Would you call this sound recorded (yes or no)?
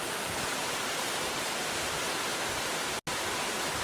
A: yes